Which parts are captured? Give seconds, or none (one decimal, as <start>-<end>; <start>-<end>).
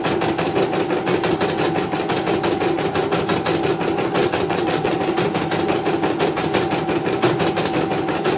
0.0-4.2; 5.0-8.4